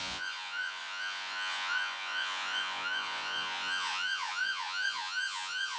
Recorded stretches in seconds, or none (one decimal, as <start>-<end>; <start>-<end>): none